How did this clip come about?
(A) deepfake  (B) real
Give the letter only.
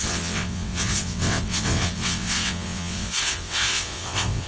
A